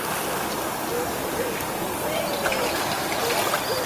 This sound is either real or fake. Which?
real